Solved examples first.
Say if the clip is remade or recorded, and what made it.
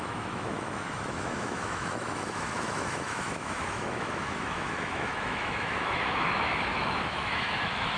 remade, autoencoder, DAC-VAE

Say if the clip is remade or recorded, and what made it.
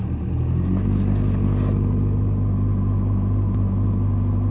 recorded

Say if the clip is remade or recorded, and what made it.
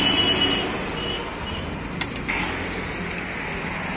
recorded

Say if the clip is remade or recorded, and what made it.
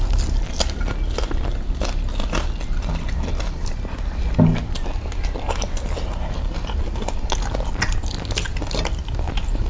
recorded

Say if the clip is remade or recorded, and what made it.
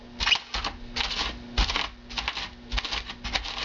recorded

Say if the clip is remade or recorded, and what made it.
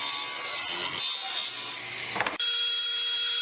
recorded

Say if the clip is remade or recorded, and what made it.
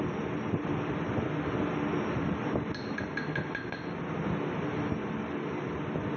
recorded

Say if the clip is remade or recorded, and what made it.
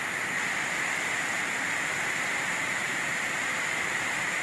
remade, vocoder, BigVGAN v2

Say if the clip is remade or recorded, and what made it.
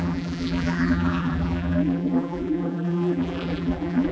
remade, vocoder, BigVGAN v2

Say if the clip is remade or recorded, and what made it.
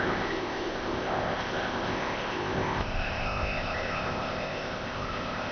remade, codec, ZipCodec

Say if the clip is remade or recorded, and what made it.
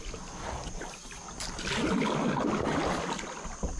recorded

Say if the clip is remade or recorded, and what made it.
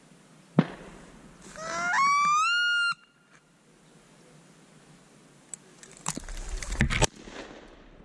recorded